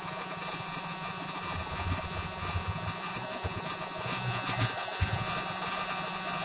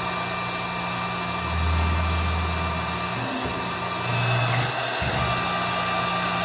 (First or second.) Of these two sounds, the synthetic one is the first